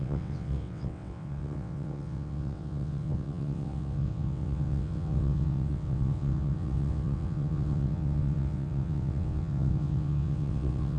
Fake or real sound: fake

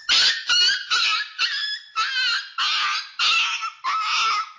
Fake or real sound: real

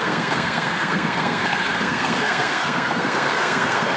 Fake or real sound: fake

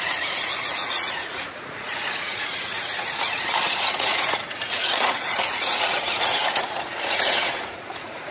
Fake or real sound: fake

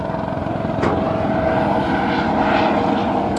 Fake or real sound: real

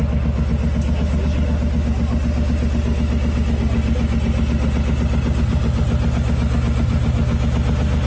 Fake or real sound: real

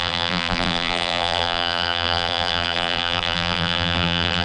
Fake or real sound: fake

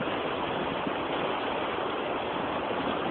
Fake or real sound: fake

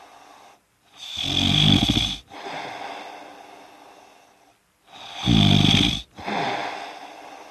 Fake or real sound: real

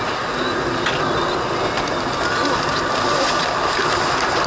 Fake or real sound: real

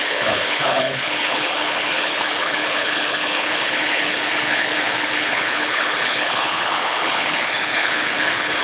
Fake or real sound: fake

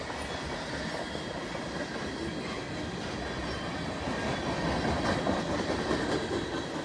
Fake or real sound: real